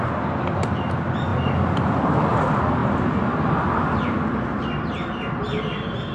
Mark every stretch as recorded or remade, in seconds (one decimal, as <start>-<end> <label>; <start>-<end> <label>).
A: 0.0-6.1 recorded